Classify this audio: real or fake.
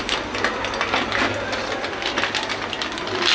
real